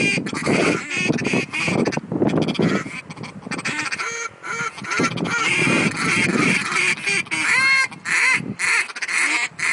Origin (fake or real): real